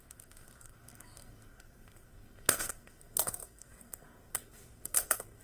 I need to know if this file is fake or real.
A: fake